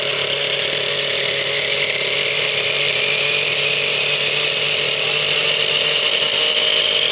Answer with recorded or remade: recorded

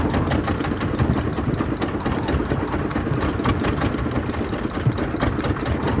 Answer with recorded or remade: recorded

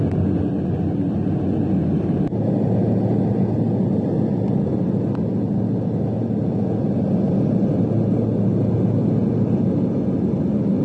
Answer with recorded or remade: recorded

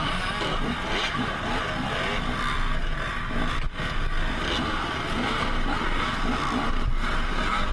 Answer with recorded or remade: recorded